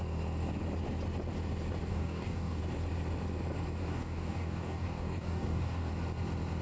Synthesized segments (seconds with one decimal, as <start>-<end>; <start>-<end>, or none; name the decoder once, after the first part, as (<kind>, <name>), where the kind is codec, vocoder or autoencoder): 1.9-2.6 (codec, DAC); 3.8-5.9